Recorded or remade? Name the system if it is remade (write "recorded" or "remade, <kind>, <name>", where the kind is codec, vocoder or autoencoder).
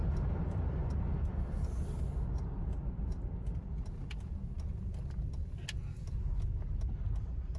recorded